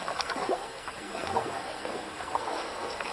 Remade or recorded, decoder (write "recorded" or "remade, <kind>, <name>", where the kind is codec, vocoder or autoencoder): remade, codec, SNAC